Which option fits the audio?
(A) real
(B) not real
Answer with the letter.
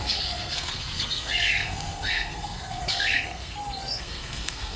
B